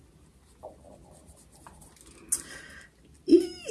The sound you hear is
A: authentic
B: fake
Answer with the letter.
A